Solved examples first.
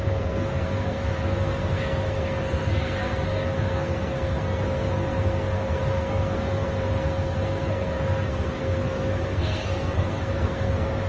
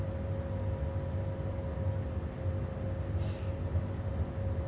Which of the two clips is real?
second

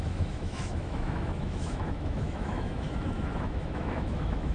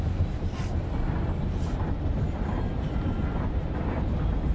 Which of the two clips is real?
second